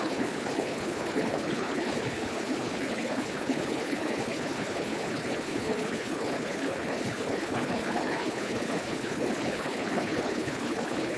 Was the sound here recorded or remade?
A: remade